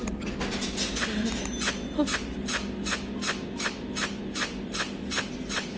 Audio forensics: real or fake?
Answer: real